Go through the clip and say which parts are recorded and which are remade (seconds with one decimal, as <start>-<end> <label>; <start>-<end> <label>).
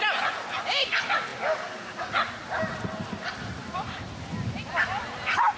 0.0-5.6 recorded